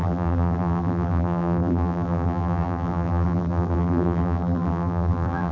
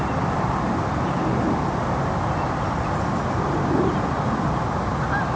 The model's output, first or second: first